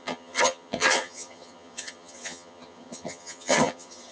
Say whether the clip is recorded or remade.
remade